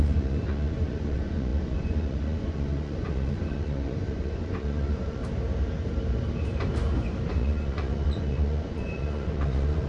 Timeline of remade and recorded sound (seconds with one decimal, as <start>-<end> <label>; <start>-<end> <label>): 0.0-5.2 remade; 5.2-7.3 recorded; 7.3-9.9 remade